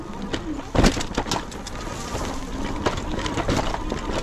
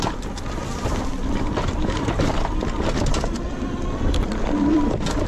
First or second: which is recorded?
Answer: first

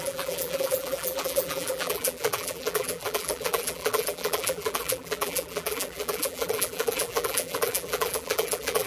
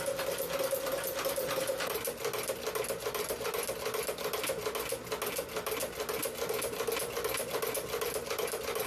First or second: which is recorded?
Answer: second